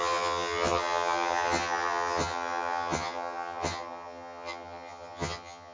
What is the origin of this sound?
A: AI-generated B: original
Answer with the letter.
A